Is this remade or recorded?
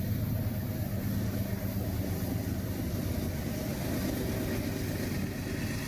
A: recorded